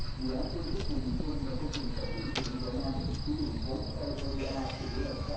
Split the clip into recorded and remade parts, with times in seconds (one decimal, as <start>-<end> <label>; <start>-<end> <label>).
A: 0.0-4.2 recorded; 4.2-5.4 remade